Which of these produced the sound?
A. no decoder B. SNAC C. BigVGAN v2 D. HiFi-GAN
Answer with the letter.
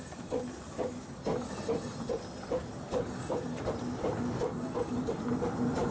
A